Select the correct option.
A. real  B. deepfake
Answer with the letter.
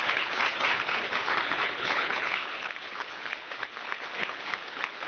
B